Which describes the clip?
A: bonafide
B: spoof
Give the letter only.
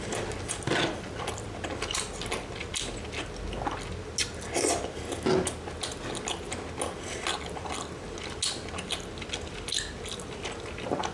A